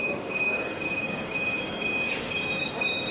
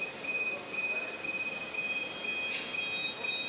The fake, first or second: first